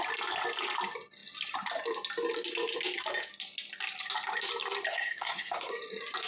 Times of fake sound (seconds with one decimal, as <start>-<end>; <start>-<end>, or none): 4.9-5.7

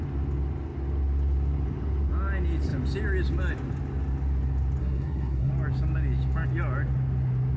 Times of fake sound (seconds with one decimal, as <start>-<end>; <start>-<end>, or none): 4.8-5.5

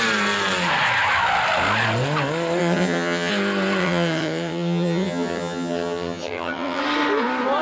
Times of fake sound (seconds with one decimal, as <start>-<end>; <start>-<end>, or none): 2.6-3.3; 3.8-6.8

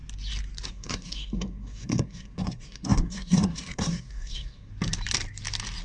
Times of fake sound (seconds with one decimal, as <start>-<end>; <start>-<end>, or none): 0.7-4.7

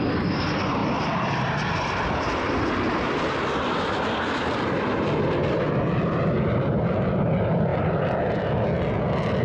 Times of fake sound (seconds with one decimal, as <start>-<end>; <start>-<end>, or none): 0.8-5.7; 7.7-9.4

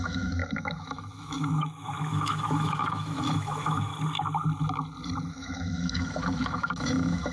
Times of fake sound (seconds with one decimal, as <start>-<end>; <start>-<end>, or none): 0.0-3.9; 5.3-7.3

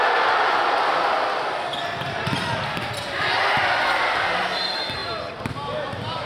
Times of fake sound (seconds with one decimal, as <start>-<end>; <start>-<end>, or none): 5.0-6.3